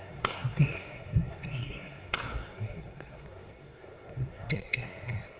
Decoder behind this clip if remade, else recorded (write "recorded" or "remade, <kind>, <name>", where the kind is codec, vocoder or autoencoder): remade, codec, SNAC